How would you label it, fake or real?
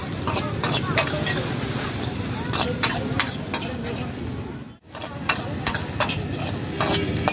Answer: real